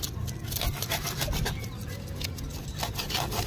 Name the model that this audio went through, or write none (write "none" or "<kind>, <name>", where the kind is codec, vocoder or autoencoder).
none